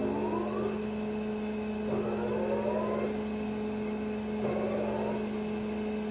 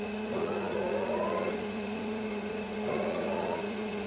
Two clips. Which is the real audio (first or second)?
first